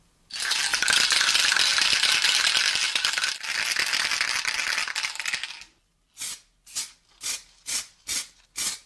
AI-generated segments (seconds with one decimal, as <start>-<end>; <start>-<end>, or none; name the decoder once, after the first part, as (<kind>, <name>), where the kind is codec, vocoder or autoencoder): none